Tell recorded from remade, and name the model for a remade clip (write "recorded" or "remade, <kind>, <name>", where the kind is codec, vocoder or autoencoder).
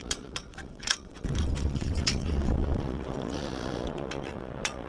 remade, vocoder, WaveNeXt